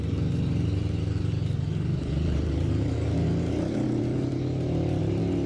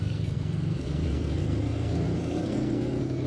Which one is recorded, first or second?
first